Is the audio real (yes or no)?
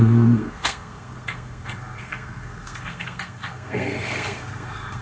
no